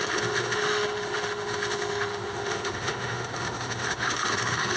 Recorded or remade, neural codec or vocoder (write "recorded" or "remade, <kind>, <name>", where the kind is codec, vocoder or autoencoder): remade, autoencoder, DAC-VAE